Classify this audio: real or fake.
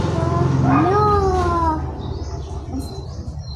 real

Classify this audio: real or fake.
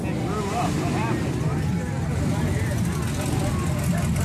real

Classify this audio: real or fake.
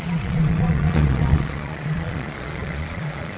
fake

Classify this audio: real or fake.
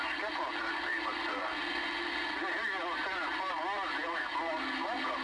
real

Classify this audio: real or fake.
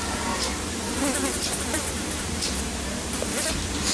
fake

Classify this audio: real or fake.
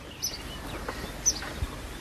real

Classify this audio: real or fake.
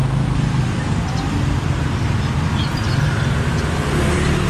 real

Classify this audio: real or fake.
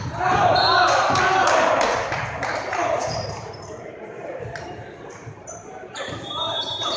fake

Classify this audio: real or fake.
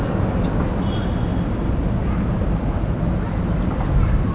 real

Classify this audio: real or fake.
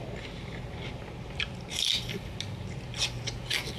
real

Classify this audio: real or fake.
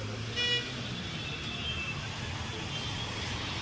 real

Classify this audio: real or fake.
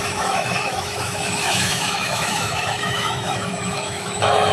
fake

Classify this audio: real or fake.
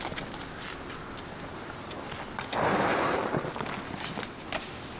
real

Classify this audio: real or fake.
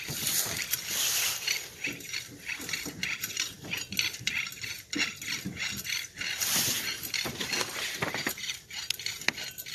real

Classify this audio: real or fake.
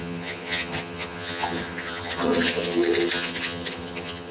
fake